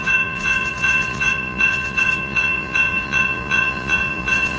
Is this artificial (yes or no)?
yes